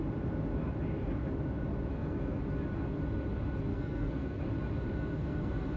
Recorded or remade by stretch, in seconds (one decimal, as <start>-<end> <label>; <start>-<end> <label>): 0.0-1.9 recorded; 1.9-2.4 remade; 2.4-3.7 recorded; 3.7-4.4 remade; 4.4-4.9 recorded; 4.9-5.8 remade

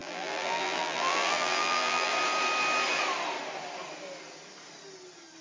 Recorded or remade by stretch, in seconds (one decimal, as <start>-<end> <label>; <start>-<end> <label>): 0.0-2.1 remade; 2.1-5.4 recorded